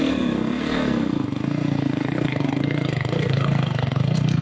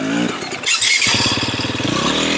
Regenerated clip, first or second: first